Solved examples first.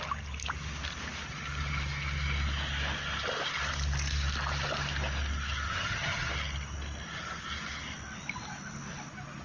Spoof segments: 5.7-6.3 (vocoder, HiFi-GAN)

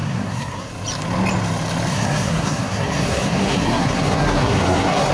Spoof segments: 0.0-0.7 (codec, SNAC); 1.9-5.1

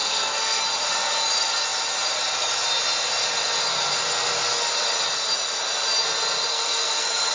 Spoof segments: 0.0-0.6 (codec, SNAC); 6.5-7.3

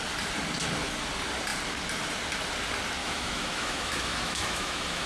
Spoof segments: 3.0-5.1 (autoencoder, DAC-VAE)

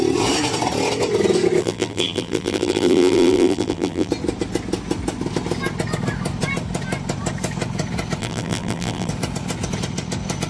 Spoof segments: 1.6-4.1 (vocoder, BigVGAN v2); 8.2-9.1

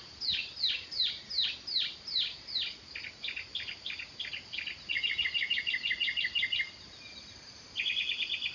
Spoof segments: none

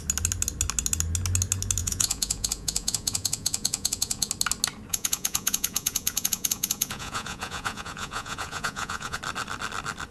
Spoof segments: 1.8-4.3 (vocoder, Vocos); 4.9-9.2

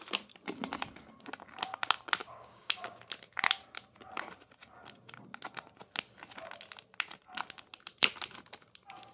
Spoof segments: 2.2-3.0 (codec, DAC)